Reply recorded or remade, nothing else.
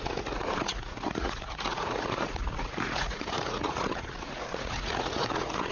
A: remade